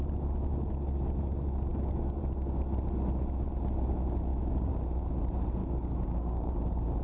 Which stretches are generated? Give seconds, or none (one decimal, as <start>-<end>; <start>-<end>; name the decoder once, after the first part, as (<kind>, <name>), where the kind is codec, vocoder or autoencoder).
1.7-2.2 (codec, DAC); 4.3-4.8; 5.6-6.5